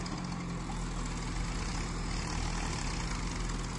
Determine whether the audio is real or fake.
real